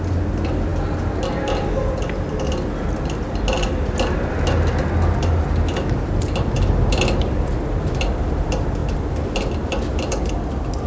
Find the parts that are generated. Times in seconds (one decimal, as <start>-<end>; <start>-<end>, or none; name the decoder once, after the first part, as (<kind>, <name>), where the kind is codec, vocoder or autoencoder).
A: 8.8-10.3 (vocoder, BigVGAN v2)